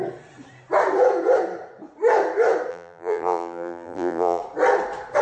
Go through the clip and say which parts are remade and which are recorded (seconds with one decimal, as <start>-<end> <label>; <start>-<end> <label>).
0.0-2.7 recorded; 2.7-4.4 remade; 4.4-5.2 recorded

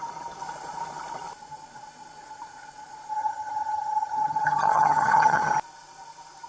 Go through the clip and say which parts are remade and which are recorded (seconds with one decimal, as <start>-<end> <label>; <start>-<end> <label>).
0.0-3.1 recorded; 3.1-5.5 remade; 5.5-6.5 recorded

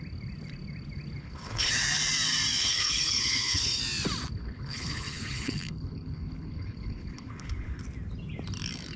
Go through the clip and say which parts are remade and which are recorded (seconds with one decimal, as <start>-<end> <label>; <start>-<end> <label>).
0.0-1.2 recorded; 1.2-1.7 remade; 1.7-2.6 recorded; 2.6-3.8 remade; 3.8-4.4 recorded; 4.4-7.8 remade; 7.8-9.0 recorded